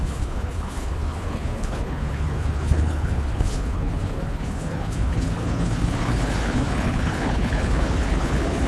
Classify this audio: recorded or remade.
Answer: remade